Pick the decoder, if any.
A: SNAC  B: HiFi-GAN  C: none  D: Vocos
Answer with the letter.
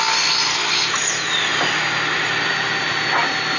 C